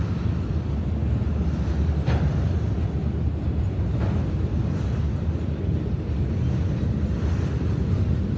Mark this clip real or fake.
real